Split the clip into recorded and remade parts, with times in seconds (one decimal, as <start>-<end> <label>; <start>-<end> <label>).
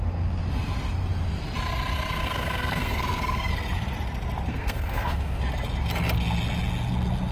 0.0-2.2 recorded; 2.2-3.5 remade; 3.5-4.5 recorded; 4.5-5.4 remade; 5.4-7.3 recorded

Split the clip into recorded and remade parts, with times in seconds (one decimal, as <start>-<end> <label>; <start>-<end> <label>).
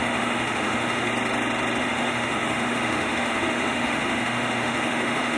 0.0-1.1 remade; 1.1-1.8 recorded; 1.8-5.4 remade